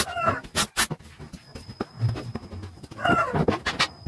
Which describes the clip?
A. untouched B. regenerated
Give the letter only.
A